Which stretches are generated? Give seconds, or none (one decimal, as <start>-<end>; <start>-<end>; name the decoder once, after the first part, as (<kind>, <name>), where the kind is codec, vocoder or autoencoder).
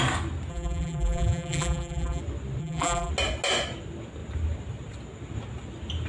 0.5-2.2 (vocoder, BigVGAN v2); 2.6-3.1